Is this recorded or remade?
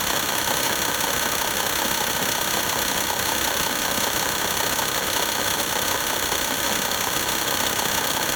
remade